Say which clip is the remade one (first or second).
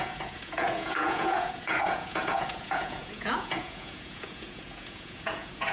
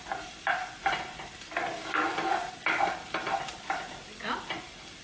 first